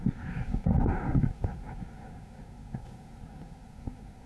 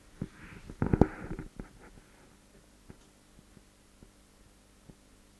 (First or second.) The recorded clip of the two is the second